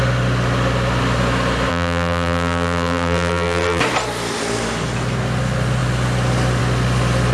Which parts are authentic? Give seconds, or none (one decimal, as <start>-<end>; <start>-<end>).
0.0-1.7; 3.8-7.3